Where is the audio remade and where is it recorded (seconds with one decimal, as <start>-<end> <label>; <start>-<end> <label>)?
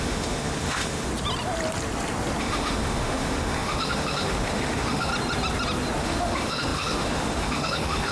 0.0-1.1 remade; 1.1-2.4 recorded; 2.4-5.1 remade; 5.1-6.0 recorded; 6.0-8.1 remade